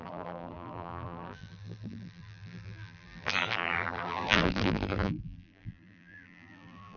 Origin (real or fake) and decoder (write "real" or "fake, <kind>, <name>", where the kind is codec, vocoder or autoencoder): fake, vocoder, BigVGAN v2